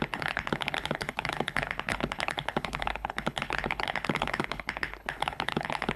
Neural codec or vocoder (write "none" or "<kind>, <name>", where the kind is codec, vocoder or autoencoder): codec, HILCodec